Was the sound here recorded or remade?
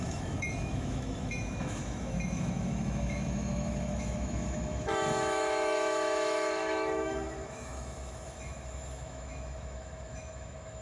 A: remade